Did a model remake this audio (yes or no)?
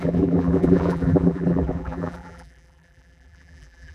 yes